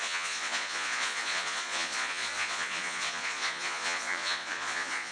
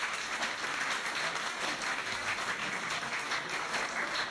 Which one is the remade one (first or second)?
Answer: first